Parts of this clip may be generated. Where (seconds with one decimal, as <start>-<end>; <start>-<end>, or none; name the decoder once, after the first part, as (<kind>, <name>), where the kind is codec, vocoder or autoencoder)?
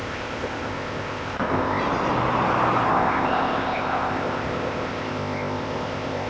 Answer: 0.0-1.8 (codec, ZipCodec); 2.9-6.3